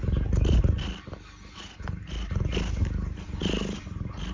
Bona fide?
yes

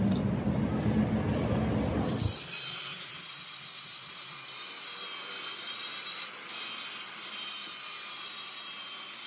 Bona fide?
no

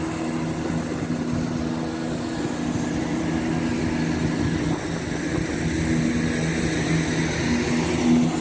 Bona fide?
yes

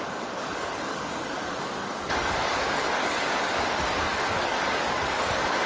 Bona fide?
no